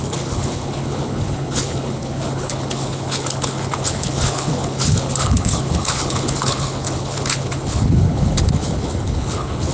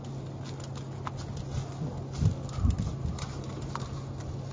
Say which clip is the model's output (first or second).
first